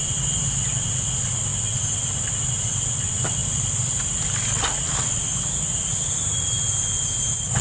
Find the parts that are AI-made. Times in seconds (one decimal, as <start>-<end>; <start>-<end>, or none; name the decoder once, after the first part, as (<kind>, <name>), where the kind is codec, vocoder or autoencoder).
3.4-4.3 (vocoder, BigVGAN v2)